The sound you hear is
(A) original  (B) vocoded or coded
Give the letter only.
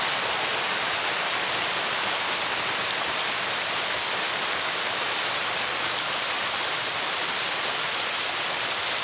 A